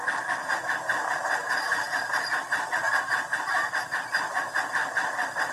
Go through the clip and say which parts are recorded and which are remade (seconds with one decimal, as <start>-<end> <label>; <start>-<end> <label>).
0.0-1.4 recorded; 1.4-2.7 remade; 2.7-4.8 recorded; 4.8-5.5 remade